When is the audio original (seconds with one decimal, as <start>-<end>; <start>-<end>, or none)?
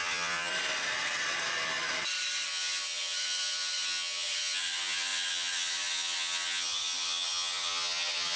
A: 0.5-2.5